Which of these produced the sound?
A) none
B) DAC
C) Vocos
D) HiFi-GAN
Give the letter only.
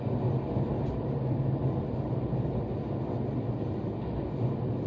A